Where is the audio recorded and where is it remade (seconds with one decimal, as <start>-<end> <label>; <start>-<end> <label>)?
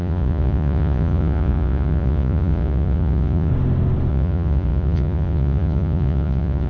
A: 0.0-3.5 remade; 3.5-4.1 recorded; 4.1-6.7 remade